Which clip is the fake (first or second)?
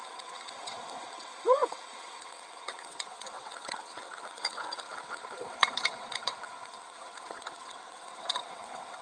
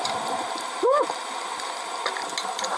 first